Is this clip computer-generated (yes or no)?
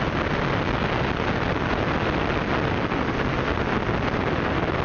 no